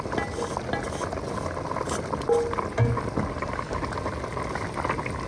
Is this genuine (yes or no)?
yes